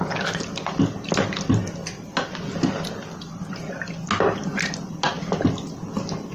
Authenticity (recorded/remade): recorded